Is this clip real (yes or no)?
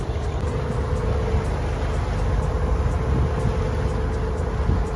yes